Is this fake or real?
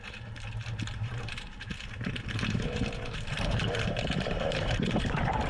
fake